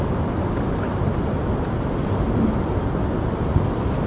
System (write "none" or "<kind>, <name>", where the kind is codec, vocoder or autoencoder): none